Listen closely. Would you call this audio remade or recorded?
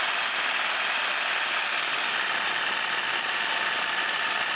recorded